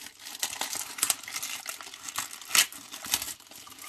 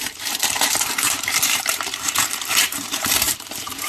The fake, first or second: second